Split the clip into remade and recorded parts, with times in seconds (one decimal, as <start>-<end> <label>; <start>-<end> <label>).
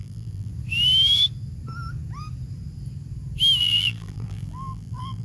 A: 0.0-0.5 remade; 0.5-3.6 recorded; 3.6-5.2 remade